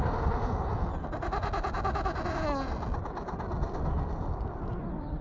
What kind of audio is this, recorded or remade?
recorded